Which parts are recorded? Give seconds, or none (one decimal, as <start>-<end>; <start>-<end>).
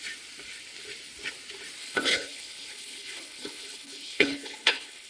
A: 0.0-1.8